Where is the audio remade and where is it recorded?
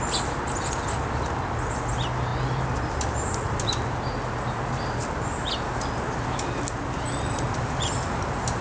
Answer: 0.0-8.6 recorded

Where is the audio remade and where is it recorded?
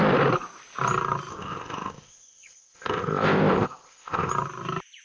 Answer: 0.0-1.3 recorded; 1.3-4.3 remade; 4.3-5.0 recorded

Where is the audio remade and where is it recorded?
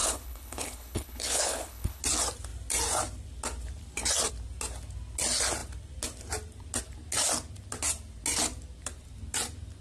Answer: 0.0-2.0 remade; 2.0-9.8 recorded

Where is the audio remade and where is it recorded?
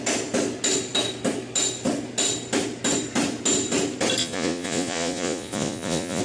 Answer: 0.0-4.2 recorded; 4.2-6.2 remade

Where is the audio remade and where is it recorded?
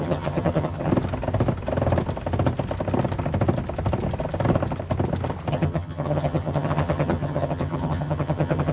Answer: 0.0-0.9 remade; 0.9-5.5 recorded; 5.5-8.7 remade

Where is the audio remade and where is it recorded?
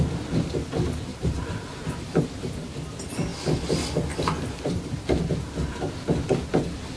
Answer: 0.0-1.1 recorded; 1.1-2.7 remade; 2.7-7.0 recorded